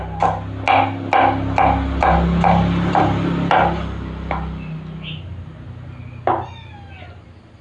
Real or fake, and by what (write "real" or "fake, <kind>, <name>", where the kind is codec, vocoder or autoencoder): real